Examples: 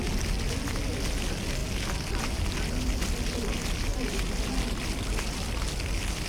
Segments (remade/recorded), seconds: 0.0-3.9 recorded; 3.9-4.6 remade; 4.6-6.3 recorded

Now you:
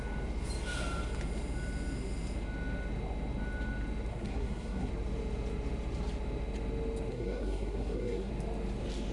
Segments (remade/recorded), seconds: 0.0-4.1 recorded; 4.1-4.9 remade; 4.9-7.1 recorded; 7.1-8.3 remade; 8.3-9.1 recorded

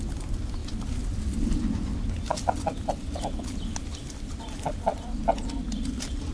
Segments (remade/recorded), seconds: 0.0-6.3 recorded

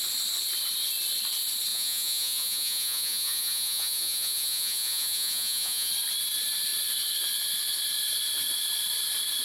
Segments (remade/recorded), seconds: 0.0-1.7 recorded; 1.7-5.9 remade; 5.9-9.4 recorded

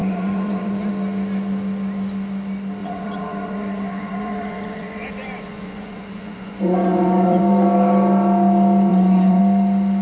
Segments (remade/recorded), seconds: 0.0-0.9 remade; 0.9-2.8 recorded; 2.8-7.4 remade; 7.4-8.9 recorded; 8.9-9.4 remade; 9.4-10.0 recorded

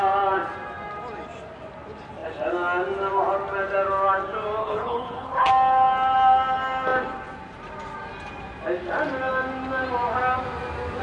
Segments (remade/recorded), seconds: 0.0-4.6 recorded; 4.6-5.5 remade; 5.5-11.0 recorded

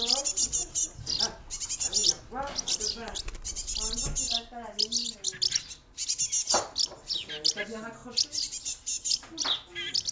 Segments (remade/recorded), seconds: 0.0-10.1 recorded

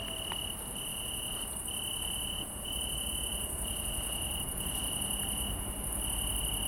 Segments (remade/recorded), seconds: 0.0-0.9 recorded; 0.9-1.4 remade; 1.4-1.9 recorded; 1.9-5.7 remade; 5.7-6.7 recorded